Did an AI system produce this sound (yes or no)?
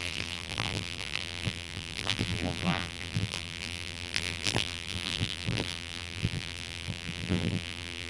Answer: yes